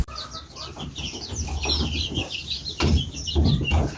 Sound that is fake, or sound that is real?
real